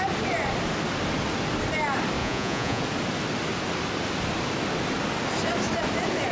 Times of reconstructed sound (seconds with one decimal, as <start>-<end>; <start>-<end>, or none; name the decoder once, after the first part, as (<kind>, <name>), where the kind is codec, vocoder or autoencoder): 2.2-2.8 (vocoder, Vocos)